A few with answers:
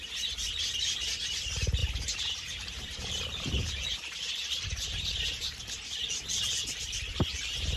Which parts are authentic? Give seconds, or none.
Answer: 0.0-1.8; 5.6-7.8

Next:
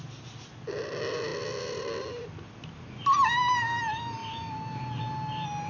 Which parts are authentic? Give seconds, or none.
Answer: 0.0-5.7

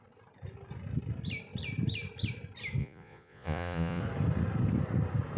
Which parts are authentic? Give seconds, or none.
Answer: 0.0-2.8; 4.0-5.4